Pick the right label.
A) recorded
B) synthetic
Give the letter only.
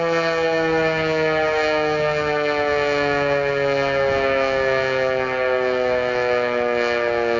A